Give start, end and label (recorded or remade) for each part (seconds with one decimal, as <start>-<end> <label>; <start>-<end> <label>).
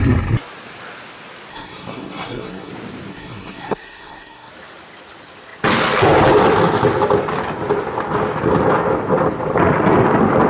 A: 0.0-1.5 recorded; 1.5-2.7 remade; 2.7-3.1 recorded; 3.1-4.5 remade; 4.5-10.5 recorded